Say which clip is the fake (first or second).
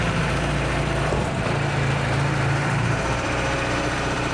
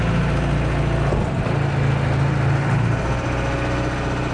first